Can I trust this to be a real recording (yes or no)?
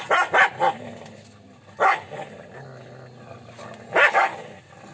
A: yes